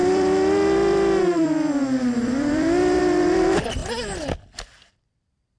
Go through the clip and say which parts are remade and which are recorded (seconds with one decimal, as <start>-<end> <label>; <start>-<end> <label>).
0.0-3.8 remade; 3.8-4.9 recorded; 4.9-5.6 remade